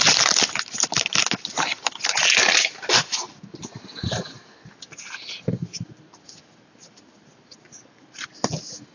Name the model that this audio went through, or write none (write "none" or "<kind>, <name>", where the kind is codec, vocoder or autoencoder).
none